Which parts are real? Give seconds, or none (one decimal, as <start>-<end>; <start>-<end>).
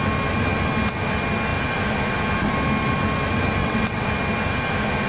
0.0-3.6; 4.1-5.1